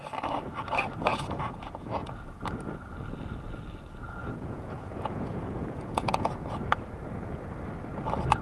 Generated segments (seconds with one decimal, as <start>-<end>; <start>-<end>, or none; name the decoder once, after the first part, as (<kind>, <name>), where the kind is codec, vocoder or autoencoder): 1.1-2.1 (vocoder, Vocos); 4.2-6.3